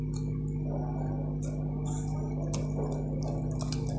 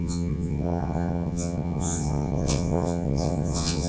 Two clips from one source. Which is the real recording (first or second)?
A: first